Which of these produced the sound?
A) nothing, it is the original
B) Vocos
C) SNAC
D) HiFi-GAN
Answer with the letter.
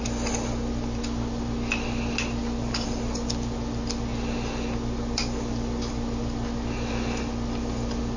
A